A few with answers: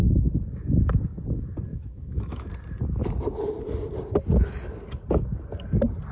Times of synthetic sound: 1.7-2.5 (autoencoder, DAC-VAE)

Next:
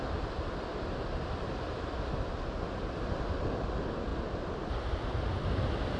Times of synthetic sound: none

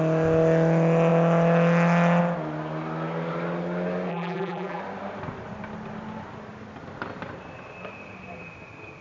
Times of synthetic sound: 4.1-4.8 (vocoder, BigVGAN v2)

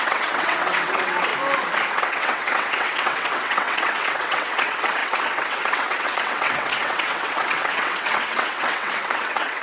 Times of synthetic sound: 0.0-1.3 (vocoder, WaveNeXt); 1.9-9.6

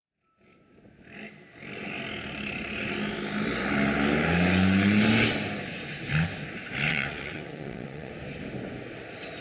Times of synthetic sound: 6.9-8.1 (vocoder, WaveNeXt)

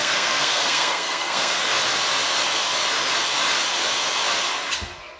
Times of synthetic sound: 0.0-1.6 (codec, SNAC)